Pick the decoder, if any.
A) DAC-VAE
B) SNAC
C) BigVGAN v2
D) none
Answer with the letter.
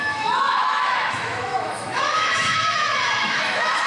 A